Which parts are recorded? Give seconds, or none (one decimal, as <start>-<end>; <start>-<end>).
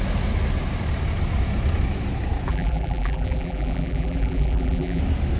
0.0-2.5; 5.0-5.4